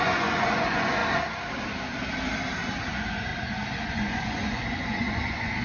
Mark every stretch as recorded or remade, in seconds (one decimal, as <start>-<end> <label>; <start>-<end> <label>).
0.0-1.0 remade; 1.0-2.9 recorded; 2.9-3.3 remade; 3.3-3.9 recorded; 3.9-5.6 remade